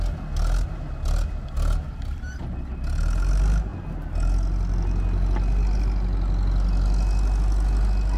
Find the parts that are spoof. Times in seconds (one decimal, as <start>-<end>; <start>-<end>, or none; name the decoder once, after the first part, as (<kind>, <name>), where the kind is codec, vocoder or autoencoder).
none